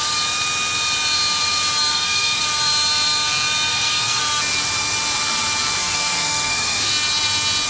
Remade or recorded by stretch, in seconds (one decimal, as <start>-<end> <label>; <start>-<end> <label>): 0.0-1.9 recorded; 1.9-2.4 remade; 2.4-3.7 recorded; 3.7-4.2 remade; 4.2-5.8 recorded; 5.8-6.9 remade; 6.9-7.7 recorded